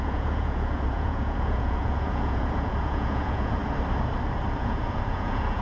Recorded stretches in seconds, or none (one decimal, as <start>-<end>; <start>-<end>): 3.6-4.6